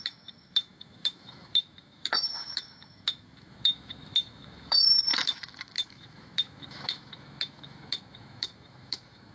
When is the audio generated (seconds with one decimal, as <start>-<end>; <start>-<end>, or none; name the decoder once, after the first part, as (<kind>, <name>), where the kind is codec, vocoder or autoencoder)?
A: 0.0-9.3 (autoencoder, DAC-VAE)